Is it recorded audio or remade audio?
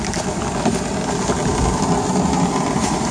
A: recorded